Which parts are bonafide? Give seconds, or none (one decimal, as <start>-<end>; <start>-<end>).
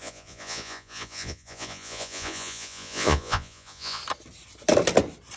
4.0-5.4